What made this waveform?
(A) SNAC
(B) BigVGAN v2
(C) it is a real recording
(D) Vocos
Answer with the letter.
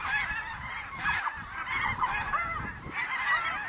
B